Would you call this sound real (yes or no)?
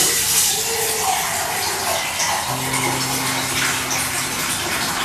yes